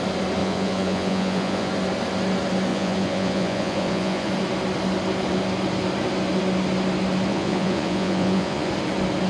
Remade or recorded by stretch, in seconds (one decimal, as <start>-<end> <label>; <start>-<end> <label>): 0.0-0.4 recorded; 0.4-1.7 remade; 1.7-2.7 recorded; 2.7-4.3 remade; 4.3-7.3 recorded; 7.3-8.7 remade; 8.7-9.3 recorded